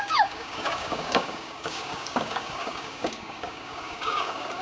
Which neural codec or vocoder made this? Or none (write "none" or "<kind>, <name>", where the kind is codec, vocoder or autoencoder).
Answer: codec, DAC